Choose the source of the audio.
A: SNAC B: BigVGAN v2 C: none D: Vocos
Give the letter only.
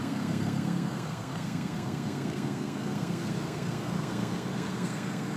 A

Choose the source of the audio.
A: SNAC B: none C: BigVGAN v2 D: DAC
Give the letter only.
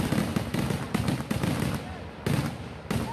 B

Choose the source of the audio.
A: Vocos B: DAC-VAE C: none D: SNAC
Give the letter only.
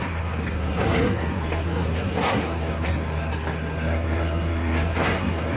D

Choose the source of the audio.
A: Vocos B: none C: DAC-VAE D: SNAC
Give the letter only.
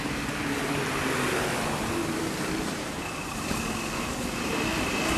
B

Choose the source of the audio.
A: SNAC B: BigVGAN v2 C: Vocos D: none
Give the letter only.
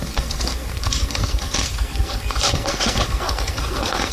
A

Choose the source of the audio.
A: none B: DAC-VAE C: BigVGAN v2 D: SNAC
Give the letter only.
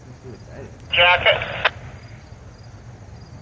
A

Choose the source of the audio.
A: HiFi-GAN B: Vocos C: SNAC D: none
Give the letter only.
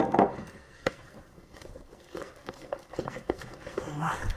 C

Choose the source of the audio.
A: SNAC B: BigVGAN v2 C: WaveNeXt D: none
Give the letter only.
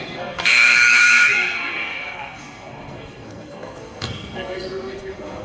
A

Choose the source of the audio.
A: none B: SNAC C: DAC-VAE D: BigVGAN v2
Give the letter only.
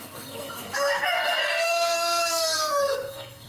B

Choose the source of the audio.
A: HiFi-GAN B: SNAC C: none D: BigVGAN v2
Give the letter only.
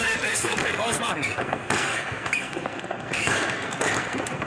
B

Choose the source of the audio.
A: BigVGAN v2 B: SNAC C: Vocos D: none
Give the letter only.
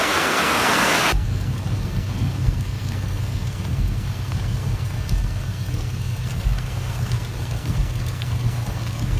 B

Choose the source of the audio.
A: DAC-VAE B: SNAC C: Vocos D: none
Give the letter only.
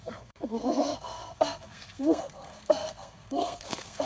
B